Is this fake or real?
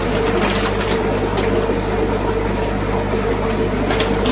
real